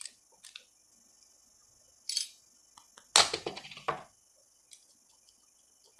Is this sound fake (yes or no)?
no